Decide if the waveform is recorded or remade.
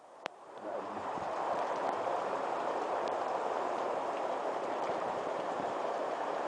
remade